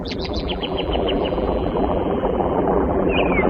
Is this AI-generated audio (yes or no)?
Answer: yes